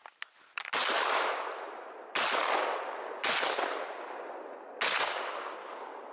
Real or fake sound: real